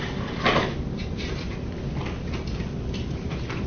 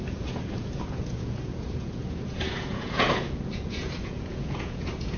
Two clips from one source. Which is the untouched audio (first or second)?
first